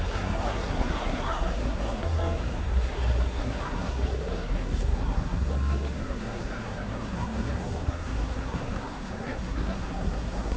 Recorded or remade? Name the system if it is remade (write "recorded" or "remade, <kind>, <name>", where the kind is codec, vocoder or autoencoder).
remade, codec, SNAC